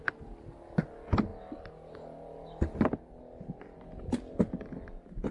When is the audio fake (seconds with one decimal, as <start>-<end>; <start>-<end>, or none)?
none